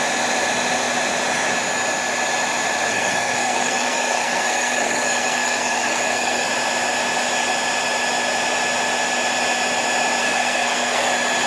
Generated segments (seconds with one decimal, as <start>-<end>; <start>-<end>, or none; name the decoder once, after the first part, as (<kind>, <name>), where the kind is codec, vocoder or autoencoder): 2.9-6.5 (codec, SNAC); 10.2-11.1